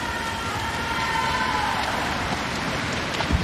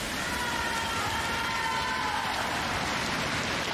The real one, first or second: second